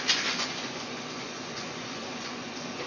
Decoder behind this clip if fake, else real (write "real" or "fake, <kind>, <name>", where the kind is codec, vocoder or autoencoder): fake, vocoder, Vocos